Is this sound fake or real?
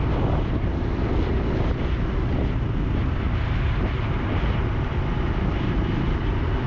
real